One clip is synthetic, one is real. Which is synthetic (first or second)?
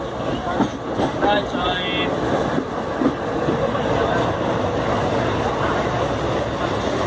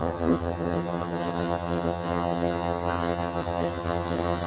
second